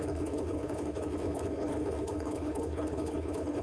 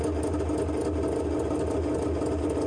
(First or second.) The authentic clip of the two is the second